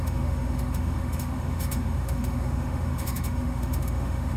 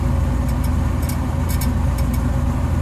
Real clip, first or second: second